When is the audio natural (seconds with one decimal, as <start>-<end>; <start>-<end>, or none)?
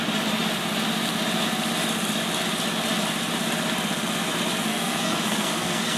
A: 0.0-4.7